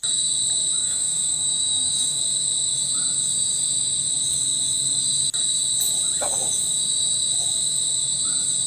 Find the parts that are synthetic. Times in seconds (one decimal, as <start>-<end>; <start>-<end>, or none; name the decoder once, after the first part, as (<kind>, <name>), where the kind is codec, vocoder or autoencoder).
0.8-2.2 (autoencoder, DAC-VAE)